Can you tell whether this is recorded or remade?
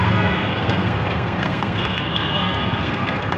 remade